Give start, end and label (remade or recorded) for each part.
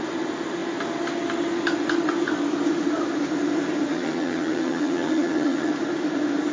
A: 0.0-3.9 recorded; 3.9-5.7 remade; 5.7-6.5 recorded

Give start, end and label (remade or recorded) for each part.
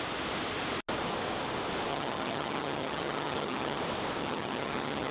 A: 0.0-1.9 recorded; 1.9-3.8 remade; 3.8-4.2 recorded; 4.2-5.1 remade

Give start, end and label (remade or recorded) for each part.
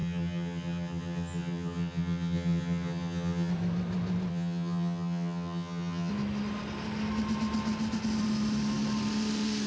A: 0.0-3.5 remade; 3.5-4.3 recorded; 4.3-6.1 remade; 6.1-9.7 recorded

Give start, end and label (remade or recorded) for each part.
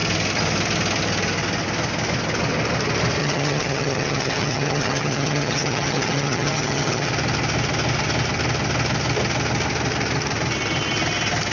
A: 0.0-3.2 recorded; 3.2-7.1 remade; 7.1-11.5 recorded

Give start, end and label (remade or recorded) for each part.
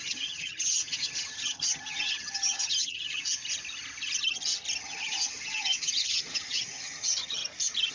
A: 0.0-3.2 remade; 3.2-4.8 recorded; 4.8-7.4 remade; 7.4-7.9 recorded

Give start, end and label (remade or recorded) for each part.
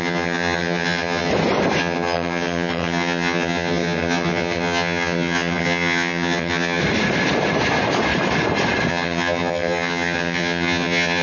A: 0.0-1.3 remade; 1.3-1.8 recorded; 1.8-6.8 remade; 6.8-8.9 recorded; 8.9-11.2 remade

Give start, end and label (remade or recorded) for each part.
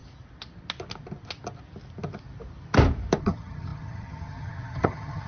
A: 0.0-3.2 recorded; 3.2-5.3 remade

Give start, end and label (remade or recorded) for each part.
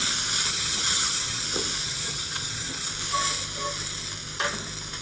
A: 0.0-0.5 recorded; 0.5-1.4 remade; 1.4-1.8 recorded; 1.8-2.9 remade; 2.9-5.0 recorded